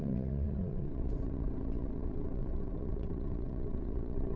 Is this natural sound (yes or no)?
no